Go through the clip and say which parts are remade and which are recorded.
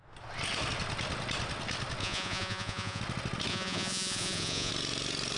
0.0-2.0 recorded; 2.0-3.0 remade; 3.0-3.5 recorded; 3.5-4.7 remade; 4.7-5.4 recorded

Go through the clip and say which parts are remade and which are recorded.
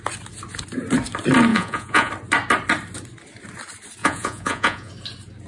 0.0-1.5 recorded; 1.5-2.1 remade; 2.1-4.0 recorded; 4.0-4.9 remade; 4.9-5.5 recorded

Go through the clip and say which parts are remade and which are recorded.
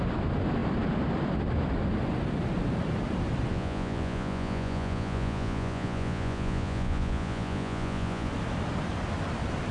0.0-3.5 recorded; 3.5-8.3 remade; 8.3-9.7 recorded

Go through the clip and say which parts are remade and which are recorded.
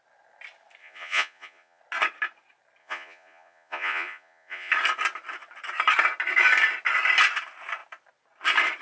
0.0-0.8 recorded; 0.8-1.8 remade; 1.8-2.8 recorded; 2.8-4.7 remade; 4.7-8.8 recorded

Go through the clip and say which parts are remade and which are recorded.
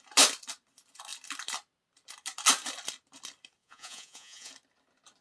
0.0-3.6 recorded; 3.6-4.5 remade; 4.5-5.2 recorded